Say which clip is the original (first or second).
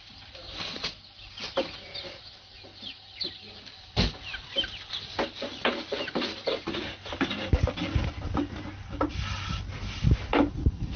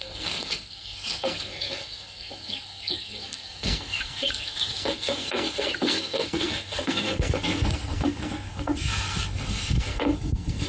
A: first